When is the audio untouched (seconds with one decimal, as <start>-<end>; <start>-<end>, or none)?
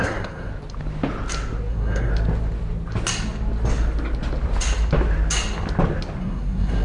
0.5-1.7; 2.1-6.2